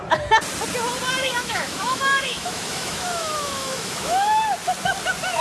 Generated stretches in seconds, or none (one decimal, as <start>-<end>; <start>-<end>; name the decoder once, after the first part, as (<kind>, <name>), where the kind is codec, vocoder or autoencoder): 1.2-4.4 (autoencoder, DAC-VAE)

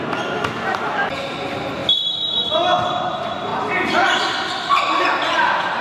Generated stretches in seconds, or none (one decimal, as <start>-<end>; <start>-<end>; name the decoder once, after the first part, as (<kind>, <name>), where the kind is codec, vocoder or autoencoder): 0.0-1.8 (vocoder, BigVGAN v2); 2.9-3.5; 5.0-5.8

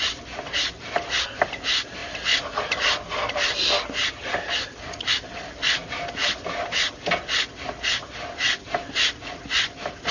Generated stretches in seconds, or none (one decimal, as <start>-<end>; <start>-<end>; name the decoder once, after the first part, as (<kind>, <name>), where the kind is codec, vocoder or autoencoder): none

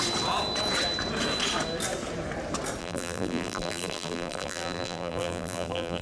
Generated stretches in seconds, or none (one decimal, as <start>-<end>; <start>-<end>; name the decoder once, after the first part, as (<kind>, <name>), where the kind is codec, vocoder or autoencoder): 2.8-6.0 (vocoder, BigVGAN v2)

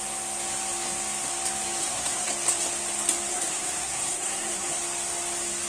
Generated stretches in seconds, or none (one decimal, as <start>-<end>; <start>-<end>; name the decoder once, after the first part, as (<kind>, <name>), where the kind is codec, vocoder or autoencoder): 1.8-2.3 (codec, SNAC); 3.3-4.8

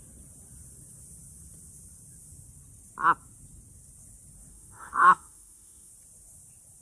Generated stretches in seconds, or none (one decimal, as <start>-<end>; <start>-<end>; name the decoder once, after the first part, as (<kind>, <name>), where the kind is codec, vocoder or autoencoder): 4.5-5.9 (autoencoder, DAC-VAE)

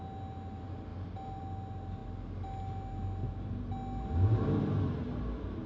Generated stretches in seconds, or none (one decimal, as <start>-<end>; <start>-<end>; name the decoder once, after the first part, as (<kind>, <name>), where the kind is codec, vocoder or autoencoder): none

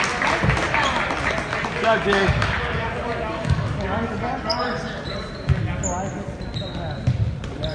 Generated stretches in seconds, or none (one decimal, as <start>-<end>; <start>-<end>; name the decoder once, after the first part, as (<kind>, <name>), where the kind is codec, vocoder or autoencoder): 1.7-4.1 (codec, DAC)